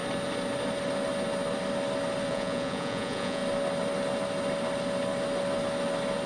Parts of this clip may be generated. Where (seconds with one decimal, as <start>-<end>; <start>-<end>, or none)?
2.3-3.4